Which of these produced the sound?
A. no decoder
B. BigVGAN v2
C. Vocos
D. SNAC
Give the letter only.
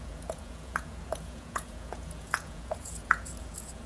C